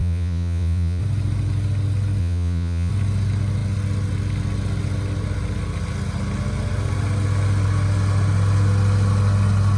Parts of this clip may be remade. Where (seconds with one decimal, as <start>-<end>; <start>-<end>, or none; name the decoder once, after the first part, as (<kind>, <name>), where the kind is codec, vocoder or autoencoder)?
0.0-1.0 (vocoder, Vocos); 2.2-2.9